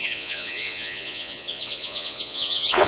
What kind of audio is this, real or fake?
fake